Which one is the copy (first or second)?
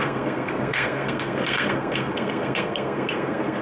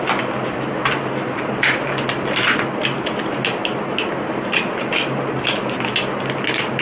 first